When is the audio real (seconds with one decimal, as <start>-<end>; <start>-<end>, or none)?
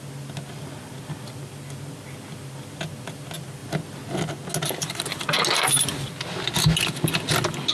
0.0-7.7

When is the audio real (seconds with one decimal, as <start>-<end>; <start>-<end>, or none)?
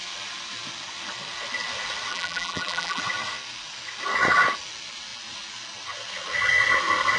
0.0-2.1; 3.0-7.2